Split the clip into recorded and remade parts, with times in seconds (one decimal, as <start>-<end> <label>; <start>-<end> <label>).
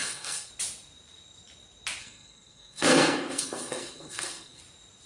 0.0-0.5 remade; 0.5-2.0 recorded; 2.0-4.6 remade; 4.6-5.1 recorded